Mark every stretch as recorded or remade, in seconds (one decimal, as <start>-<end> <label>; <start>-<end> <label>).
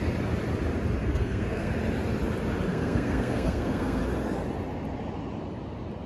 0.0-1.0 recorded; 1.0-1.7 remade; 1.7-2.7 recorded; 2.7-4.0 remade; 4.0-6.1 recorded